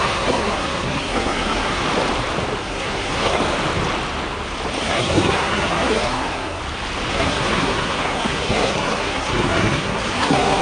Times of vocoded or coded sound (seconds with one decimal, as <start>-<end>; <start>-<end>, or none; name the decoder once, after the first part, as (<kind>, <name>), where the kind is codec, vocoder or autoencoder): 0.0-1.8 (codec, SNAC); 2.6-3.4; 4.8-6.6; 7.1-10.6